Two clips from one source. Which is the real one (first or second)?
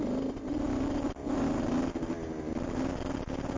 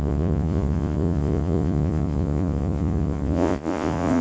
first